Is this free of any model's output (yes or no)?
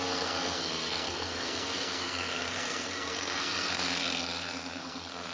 no